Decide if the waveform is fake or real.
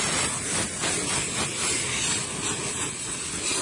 real